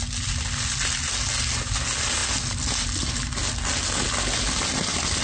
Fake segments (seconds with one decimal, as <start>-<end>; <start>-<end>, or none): none